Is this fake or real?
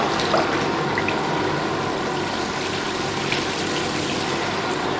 real